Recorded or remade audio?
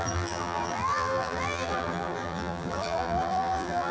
remade